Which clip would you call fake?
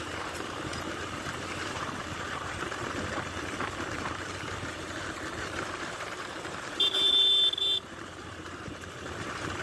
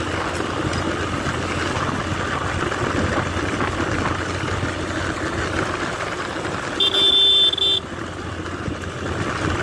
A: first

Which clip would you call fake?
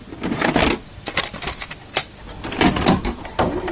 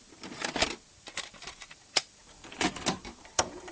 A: second